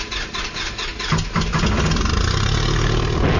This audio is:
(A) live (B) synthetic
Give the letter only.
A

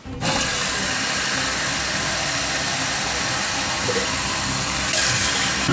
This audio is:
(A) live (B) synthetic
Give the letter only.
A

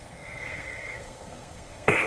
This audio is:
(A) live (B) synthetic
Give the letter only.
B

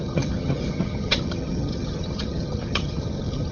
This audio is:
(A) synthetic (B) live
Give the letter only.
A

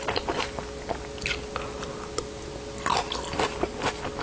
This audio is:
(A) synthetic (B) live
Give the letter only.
B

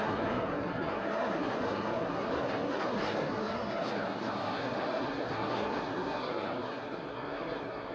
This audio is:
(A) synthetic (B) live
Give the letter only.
A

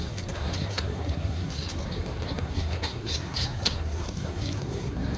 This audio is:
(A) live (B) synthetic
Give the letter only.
B